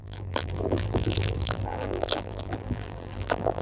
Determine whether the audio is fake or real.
fake